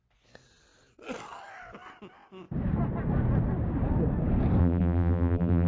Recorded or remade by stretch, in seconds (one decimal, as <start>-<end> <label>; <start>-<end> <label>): 0.0-4.6 recorded; 4.6-5.7 remade

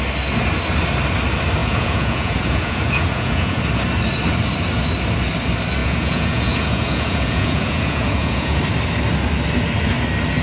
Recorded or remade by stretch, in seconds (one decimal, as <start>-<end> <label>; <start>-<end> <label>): 0.0-1.6 recorded; 1.6-3.6 remade; 3.6-5.8 recorded; 5.8-8.6 remade; 8.6-10.4 recorded